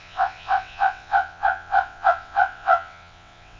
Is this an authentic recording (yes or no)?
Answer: no